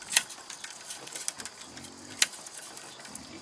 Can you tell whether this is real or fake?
real